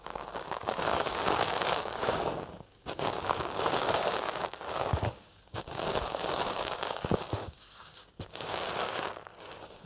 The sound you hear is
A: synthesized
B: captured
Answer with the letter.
A